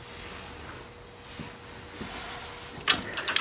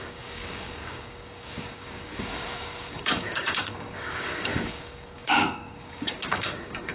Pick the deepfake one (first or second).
second